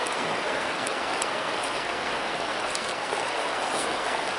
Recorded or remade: remade